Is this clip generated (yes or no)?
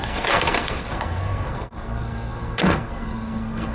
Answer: yes